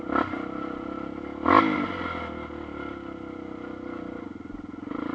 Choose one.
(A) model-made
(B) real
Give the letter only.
B